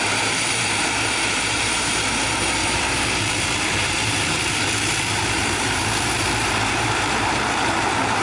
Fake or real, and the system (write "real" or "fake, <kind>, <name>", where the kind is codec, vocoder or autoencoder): fake, vocoder, BigVGAN v2